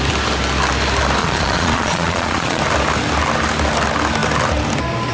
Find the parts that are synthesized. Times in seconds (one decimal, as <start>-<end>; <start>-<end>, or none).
1.2-2.6